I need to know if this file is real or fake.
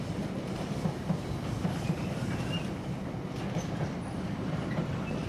real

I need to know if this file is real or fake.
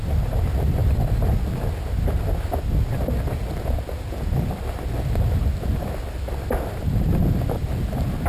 real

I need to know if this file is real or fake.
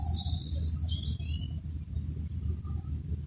real